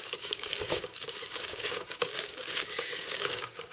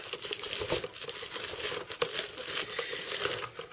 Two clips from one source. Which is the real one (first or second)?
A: second